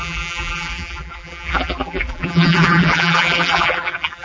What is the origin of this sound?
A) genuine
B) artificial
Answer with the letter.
B